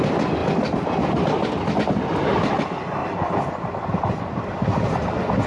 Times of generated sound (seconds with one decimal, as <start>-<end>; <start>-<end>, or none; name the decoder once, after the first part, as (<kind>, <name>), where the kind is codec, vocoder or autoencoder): none